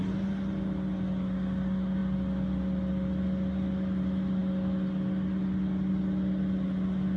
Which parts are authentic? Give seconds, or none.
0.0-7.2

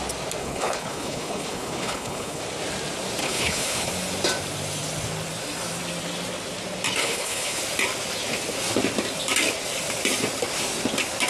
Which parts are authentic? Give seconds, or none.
0.0-0.4; 2.4-3.2; 3.9-7.0; 7.6-11.3

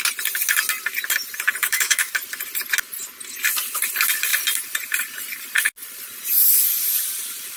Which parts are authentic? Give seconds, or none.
0.0-1.6; 2.1-7.6